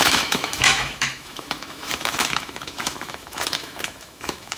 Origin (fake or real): fake